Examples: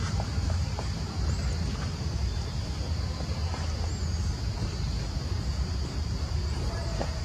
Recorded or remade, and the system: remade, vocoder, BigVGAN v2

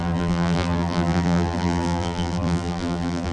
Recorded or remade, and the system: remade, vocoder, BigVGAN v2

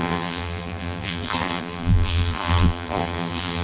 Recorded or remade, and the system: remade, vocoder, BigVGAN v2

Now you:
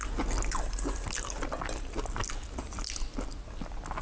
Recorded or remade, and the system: recorded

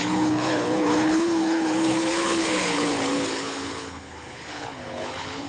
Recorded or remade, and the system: remade, codec, HILCodec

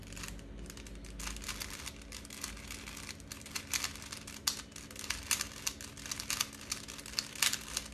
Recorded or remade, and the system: recorded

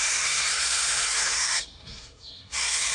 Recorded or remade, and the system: remade, codec, SNAC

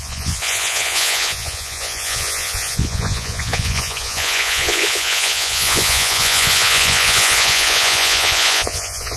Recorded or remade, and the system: remade, vocoder, Vocos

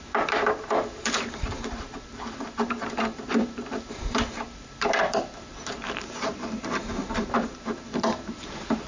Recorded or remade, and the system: remade, vocoder, BigVGAN v2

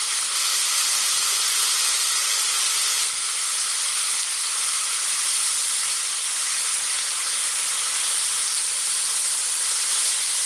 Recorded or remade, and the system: recorded